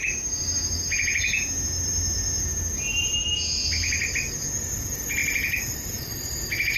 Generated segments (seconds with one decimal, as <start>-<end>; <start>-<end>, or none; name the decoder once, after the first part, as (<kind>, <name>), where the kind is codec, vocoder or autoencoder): none